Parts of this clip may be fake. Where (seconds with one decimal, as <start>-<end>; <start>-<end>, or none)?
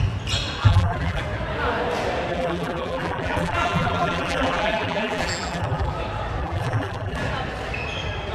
0.6-1.2; 2.3-5.9; 6.4-7.2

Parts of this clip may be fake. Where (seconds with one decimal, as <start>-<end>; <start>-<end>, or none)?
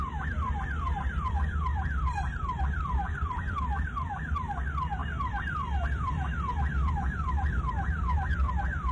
0.0-8.9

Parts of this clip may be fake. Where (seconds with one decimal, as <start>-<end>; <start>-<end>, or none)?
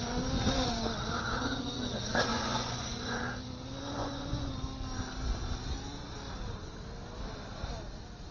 2.3-3.2; 4.0-4.5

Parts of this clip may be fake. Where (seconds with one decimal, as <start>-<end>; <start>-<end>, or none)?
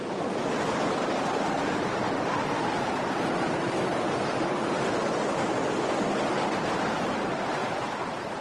7.6-8.4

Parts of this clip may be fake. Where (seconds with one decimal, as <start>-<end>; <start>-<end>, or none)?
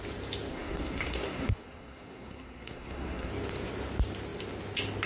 0.5-3.3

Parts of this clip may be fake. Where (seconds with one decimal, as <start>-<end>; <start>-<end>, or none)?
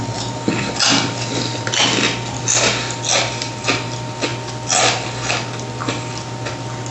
none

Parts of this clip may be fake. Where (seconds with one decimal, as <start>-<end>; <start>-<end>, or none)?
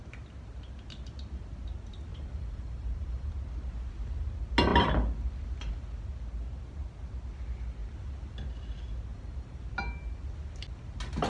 2.1-3.3; 9.1-9.6